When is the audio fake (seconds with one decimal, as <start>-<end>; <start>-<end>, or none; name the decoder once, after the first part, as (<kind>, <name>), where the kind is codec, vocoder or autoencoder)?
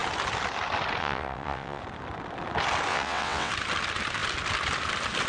1.0-1.8 (vocoder, WaveNeXt); 2.9-3.5